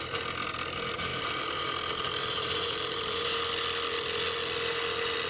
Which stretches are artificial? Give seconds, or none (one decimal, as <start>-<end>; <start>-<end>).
1.1-3.4